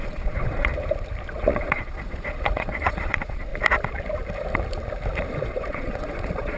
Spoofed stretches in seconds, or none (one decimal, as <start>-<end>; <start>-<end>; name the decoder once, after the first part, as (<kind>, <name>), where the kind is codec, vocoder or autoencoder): 0.0-0.7 (vocoder, Vocos); 1.3-3.5; 5.4-6.6